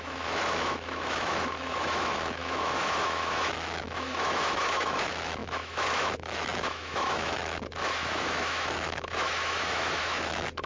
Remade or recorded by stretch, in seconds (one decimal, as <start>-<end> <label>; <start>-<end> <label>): 0.0-10.7 remade